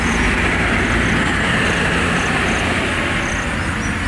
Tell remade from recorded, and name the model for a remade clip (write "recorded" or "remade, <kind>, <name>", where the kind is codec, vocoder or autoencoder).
recorded